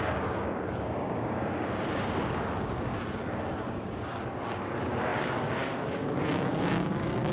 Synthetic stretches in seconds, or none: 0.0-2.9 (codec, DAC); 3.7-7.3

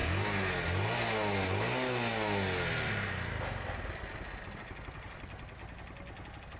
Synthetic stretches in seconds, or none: none

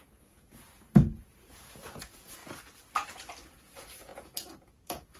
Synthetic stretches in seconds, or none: 0.0-2.4 (vocoder, Vocos); 3.5-5.2

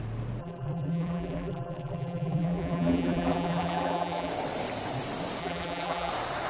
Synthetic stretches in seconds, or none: 0.4-4.3 (vocoder, BigVGAN v2); 5.4-6.1